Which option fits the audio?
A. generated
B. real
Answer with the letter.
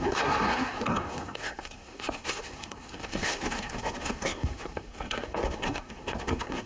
A